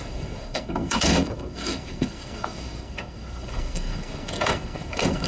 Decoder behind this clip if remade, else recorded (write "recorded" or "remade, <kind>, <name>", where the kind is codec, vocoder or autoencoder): remade, codec, SNAC